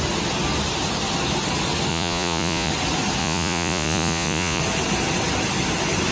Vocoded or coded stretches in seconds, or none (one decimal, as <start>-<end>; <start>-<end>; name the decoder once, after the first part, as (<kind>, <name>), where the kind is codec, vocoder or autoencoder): 1.9-2.7 (vocoder, Vocos); 3.2-4.6